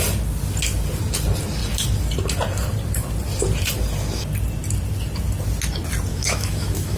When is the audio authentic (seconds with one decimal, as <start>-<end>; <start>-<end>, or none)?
0.0-6.1